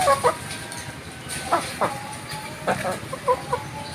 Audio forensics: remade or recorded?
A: recorded